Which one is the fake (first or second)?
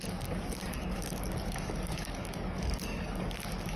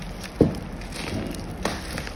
first